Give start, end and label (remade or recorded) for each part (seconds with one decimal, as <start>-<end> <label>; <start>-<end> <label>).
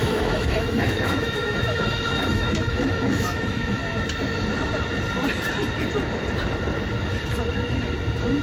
0.0-3.8 remade; 3.8-8.4 recorded